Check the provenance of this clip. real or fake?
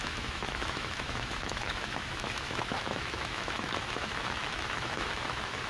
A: fake